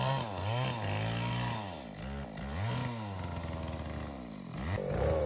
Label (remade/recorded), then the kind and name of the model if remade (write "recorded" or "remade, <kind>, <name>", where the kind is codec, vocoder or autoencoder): recorded